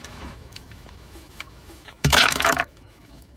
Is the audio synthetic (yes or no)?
yes